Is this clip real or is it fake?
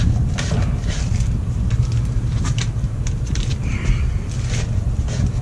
fake